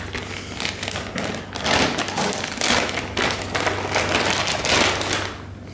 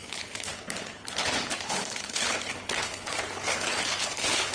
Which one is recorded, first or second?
first